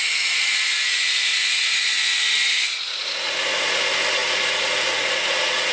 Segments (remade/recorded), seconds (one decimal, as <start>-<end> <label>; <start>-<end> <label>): 0.0-3.4 remade; 3.4-4.2 recorded; 4.2-5.7 remade

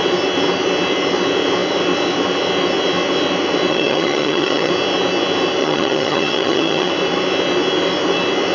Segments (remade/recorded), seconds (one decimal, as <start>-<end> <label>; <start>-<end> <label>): 0.0-3.7 recorded; 3.7-4.7 remade; 4.7-5.6 recorded; 5.6-6.9 remade; 6.9-8.5 recorded